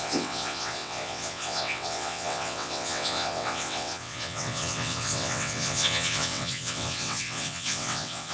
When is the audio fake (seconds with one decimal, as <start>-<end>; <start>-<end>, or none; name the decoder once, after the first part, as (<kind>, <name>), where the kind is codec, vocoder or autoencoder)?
0.0-8.3 (vocoder, WaveNeXt)